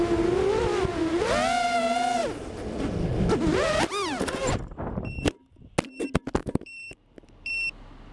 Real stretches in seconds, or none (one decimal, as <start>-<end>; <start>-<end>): 0.0-4.4; 5.7-6.4; 7.5-8.1